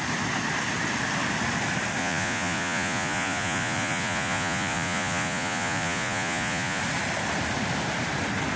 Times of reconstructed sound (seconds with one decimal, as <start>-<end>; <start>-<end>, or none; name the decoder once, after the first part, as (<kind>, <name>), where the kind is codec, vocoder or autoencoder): 2.0-6.8 (vocoder, Vocos)